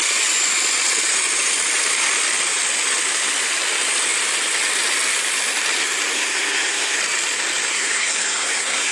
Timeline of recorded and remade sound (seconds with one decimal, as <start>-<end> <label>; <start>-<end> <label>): 0.0-6.1 recorded; 6.1-7.0 remade; 7.0-7.7 recorded; 7.7-8.9 remade